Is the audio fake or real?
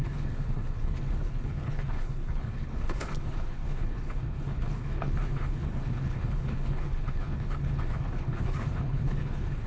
fake